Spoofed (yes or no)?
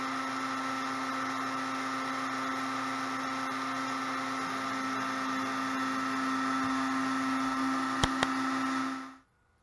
no